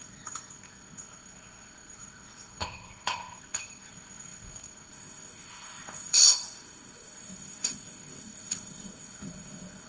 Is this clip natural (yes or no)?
no